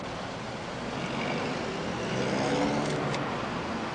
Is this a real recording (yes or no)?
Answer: yes